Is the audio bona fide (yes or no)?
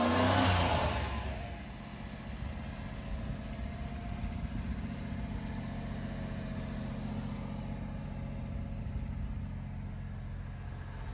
yes